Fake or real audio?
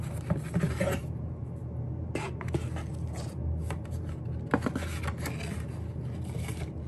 real